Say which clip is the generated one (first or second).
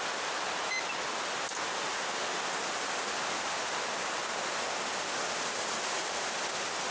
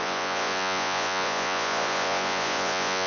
second